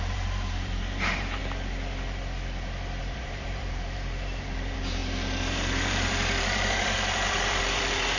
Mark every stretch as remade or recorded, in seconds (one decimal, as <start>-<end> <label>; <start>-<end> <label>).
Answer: 0.0-1.4 remade; 1.4-3.0 recorded; 3.0-8.2 remade

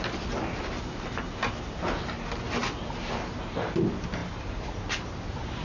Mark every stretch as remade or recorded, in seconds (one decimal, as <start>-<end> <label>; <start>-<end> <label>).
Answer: 0.0-4.2 recorded; 4.2-5.6 remade

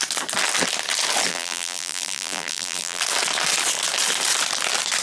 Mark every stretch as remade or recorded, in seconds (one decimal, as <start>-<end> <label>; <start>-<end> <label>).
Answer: 0.0-1.3 recorded; 1.3-3.0 remade; 3.0-5.0 recorded

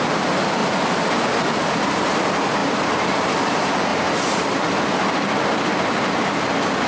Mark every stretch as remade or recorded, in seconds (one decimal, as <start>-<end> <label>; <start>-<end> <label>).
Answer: 0.0-0.6 remade; 0.6-1.7 recorded; 1.7-3.9 remade; 3.9-5.8 recorded; 5.8-6.9 remade

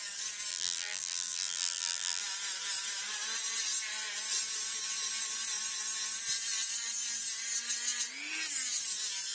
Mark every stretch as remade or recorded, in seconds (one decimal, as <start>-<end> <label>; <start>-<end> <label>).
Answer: 0.0-0.5 recorded; 0.5-2.2 remade; 2.2-9.3 recorded

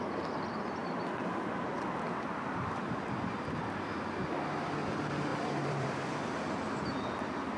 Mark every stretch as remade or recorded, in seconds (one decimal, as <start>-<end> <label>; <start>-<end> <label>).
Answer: 0.0-5.3 recorded; 5.3-6.4 remade; 6.4-7.6 recorded

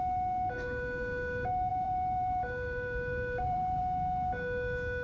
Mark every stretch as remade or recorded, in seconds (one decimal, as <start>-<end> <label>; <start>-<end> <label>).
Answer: 0.0-1.7 recorded; 1.7-3.8 remade; 3.8-5.0 recorded